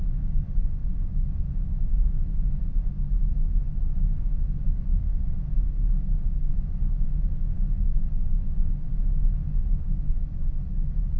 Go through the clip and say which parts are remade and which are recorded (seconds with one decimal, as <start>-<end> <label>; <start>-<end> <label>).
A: 0.0-0.8 recorded; 0.8-4.0 remade; 4.0-4.9 recorded; 4.9-6.5 remade; 6.5-11.2 recorded

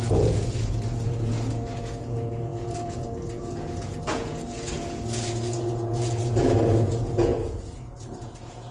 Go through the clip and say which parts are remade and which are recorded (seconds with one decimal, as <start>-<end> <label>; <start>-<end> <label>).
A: 0.0-8.7 remade

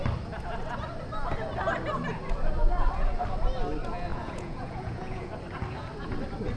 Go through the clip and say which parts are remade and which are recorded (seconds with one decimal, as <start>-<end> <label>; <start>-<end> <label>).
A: 0.0-4.1 recorded; 4.1-5.3 remade; 5.3-6.6 recorded